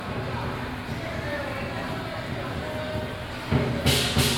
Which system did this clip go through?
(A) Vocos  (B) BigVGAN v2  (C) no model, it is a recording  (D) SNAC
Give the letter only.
C